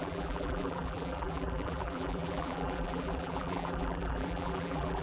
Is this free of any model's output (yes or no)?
no